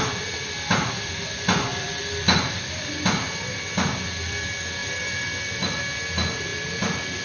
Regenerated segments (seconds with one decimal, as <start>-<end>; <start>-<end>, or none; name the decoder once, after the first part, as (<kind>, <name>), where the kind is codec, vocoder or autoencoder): 1.7-2.6 (vocoder, BigVGAN v2); 4.8-5.8; 6.5-7.2